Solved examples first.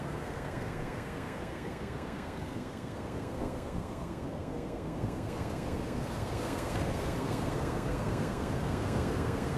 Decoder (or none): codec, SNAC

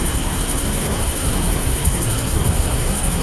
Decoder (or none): codec, SNAC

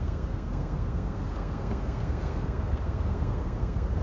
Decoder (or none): codec, SNAC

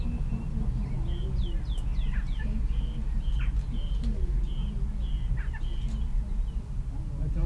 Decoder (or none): none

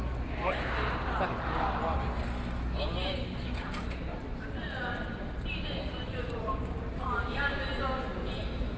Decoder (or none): none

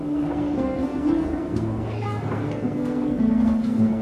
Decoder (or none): codec, SNAC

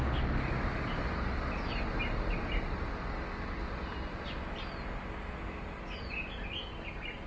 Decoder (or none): none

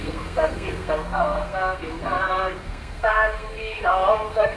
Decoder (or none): codec, SNAC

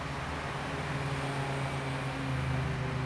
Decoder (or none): none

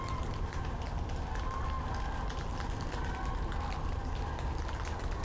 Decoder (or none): none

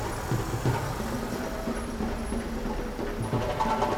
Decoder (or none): none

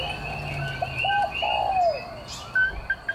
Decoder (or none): none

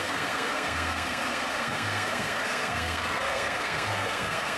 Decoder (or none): codec, SNAC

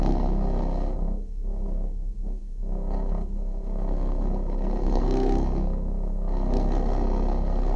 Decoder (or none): codec, SNAC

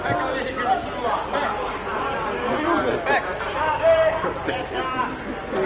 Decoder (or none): none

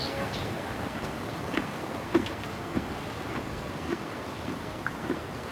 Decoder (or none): codec, SNAC